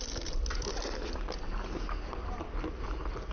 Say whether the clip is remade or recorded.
recorded